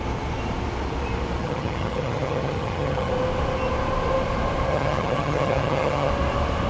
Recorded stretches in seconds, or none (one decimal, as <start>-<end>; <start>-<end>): 0.0-1.4; 3.1-4.7; 6.1-6.7

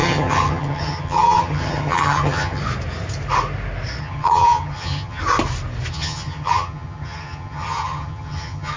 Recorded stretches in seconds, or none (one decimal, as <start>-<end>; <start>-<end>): 2.6-4.0; 5.2-5.9